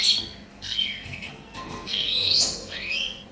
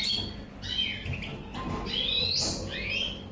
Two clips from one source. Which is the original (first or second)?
second